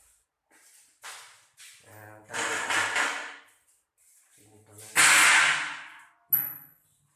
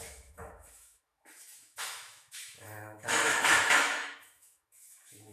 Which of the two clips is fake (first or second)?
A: second